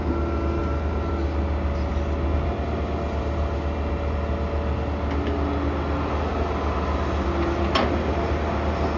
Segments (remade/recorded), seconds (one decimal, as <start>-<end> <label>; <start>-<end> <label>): 0.0-9.0 recorded